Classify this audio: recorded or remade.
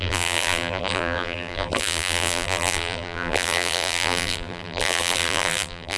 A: remade